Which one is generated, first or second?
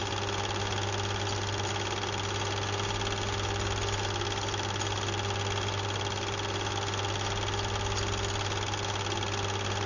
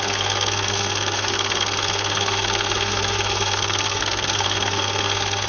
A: second